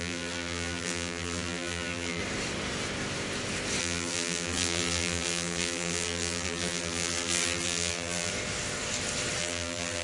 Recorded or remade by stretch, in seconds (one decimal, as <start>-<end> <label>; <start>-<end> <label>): 0.0-2.2 remade; 2.2-3.8 recorded; 3.8-8.3 remade; 8.3-9.4 recorded; 9.4-10.0 remade